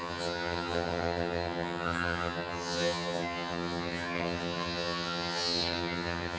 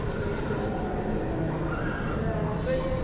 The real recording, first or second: second